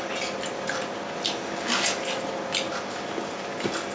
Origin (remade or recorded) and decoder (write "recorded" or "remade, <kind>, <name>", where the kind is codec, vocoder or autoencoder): recorded